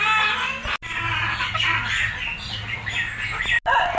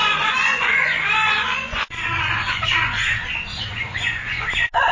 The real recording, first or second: first